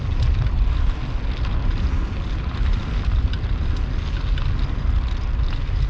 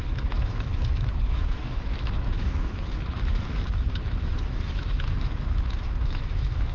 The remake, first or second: second